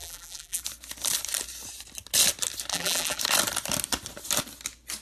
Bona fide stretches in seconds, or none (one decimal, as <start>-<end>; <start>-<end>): 0.6-2.7; 3.2-5.0